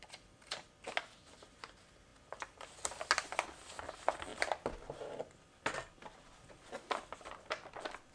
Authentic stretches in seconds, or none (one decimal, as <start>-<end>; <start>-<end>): 0.0-8.1